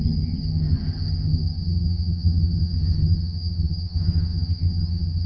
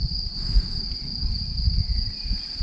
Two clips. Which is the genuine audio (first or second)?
second